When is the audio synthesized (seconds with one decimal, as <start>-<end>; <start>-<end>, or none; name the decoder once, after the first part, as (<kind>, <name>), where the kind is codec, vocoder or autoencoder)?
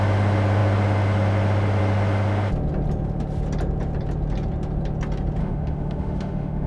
5.4-6.7 (autoencoder, DAC-VAE)